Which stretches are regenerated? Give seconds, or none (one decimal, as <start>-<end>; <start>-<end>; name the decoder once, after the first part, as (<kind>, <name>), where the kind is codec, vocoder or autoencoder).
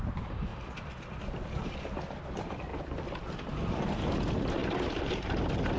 0.0-0.5 (vocoder, BigVGAN v2); 1.6-2.7; 3.7-5.8